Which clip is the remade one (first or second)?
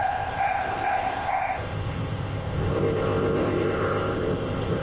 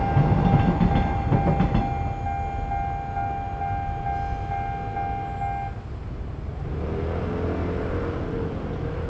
first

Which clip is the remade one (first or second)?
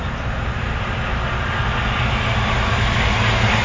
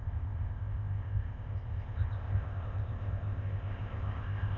second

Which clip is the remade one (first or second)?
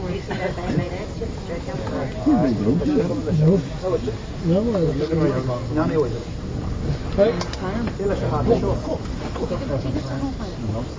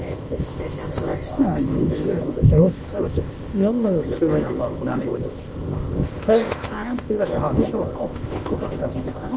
second